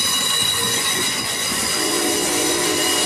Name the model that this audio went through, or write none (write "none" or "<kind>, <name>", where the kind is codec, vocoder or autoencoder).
vocoder, Vocos